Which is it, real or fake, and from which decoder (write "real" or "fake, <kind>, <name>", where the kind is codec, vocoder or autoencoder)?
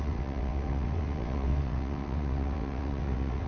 fake, vocoder, WaveNeXt